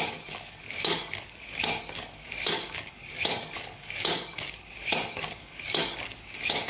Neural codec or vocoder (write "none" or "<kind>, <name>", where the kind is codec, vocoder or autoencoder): codec, DAC